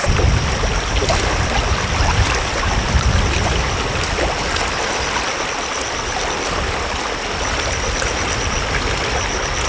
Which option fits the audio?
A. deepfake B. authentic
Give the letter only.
B